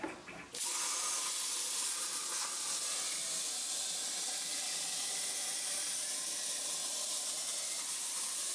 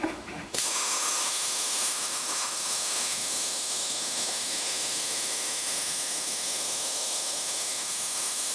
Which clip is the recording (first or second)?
first